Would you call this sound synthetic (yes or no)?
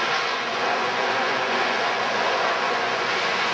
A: yes